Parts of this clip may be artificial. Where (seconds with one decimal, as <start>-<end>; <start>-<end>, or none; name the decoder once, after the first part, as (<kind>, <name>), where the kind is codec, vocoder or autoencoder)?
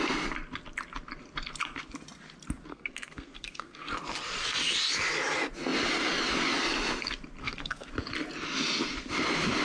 2.7-3.9 (codec, SNAC); 7.4-7.9